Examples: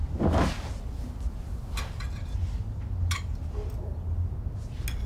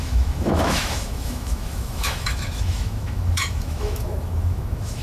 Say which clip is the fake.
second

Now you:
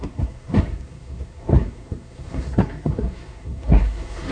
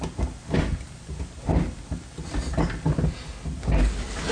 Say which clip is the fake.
first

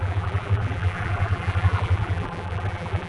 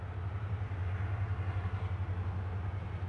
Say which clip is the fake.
first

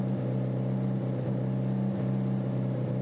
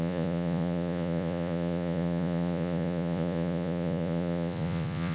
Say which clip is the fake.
second